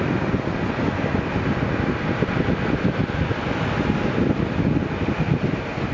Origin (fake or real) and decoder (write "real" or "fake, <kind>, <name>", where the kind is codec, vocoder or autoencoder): real